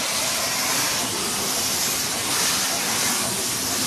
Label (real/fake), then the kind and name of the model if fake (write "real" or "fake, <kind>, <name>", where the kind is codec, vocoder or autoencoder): real